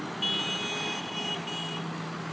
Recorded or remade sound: recorded